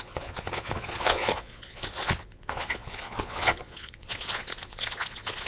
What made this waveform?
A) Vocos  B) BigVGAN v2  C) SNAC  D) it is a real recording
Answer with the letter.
A